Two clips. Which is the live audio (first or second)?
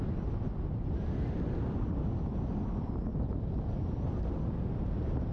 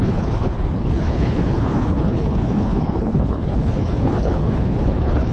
first